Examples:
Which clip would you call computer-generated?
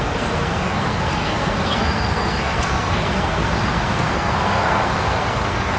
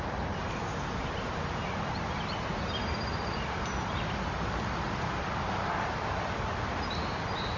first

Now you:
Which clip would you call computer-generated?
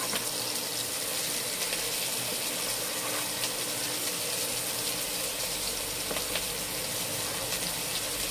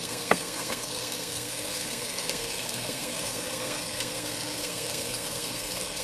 second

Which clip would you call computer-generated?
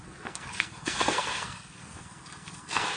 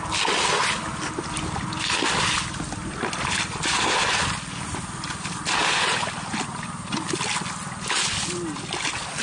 first